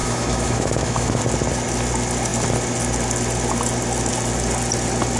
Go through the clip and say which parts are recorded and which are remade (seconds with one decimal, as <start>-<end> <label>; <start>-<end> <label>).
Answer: 0.0-1.2 remade; 1.2-5.2 recorded